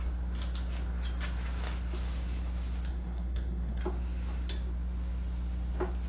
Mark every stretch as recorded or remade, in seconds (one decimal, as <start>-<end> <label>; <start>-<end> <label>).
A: 0.0-2.9 recorded; 2.9-3.8 remade; 3.8-6.1 recorded